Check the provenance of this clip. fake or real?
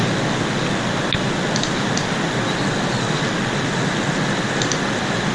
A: real